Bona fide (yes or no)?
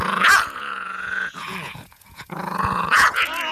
no